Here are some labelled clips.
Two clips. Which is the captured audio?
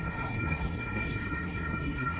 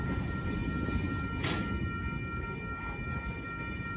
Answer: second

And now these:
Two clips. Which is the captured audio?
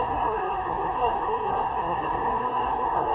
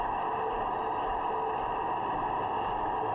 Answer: second